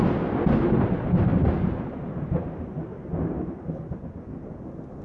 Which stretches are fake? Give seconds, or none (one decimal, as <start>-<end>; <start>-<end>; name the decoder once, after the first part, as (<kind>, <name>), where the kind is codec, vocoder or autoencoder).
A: none

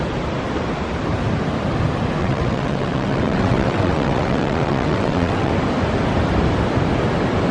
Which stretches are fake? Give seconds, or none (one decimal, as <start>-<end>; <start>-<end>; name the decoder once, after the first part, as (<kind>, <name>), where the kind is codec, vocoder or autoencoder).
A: 2.2-5.5 (vocoder, WaveNeXt)

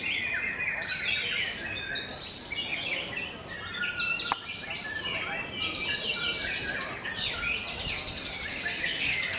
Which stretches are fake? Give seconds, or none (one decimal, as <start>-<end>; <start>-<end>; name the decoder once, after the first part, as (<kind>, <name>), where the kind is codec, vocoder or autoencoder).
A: 8.5-9.4 (vocoder, BigVGAN v2)

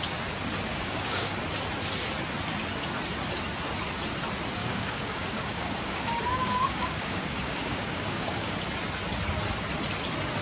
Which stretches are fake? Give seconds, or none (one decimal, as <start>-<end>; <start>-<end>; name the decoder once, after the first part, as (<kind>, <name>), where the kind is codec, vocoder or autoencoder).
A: 0.7-1.3 (codec, DAC); 4.6-8.5

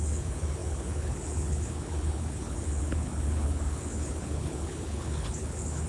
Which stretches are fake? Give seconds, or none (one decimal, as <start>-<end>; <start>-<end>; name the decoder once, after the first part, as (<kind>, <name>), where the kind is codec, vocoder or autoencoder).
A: 0.0-5.9 (codec, HILCodec)

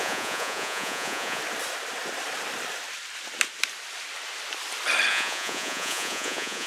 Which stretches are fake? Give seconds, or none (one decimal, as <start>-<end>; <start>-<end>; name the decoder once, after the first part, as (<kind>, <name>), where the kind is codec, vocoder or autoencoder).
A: 0.0-1.4 (vocoder, Vocos); 5.1-6.7

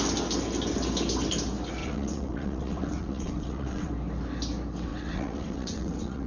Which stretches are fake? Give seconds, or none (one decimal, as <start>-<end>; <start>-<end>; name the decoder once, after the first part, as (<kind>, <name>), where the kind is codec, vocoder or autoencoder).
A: 1.8-3.9 (vocoder, WaveNeXt); 4.9-6.3